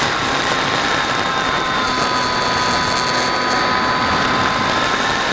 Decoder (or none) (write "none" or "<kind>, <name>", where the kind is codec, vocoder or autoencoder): none